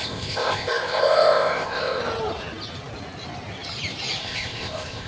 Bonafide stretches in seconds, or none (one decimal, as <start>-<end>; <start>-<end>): 2.0-4.2